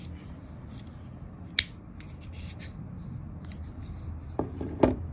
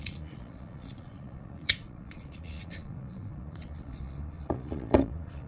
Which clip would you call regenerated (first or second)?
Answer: second